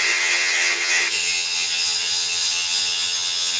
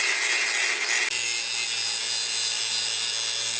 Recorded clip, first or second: second